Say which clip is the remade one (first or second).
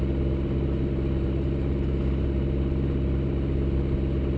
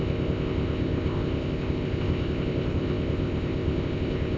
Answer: second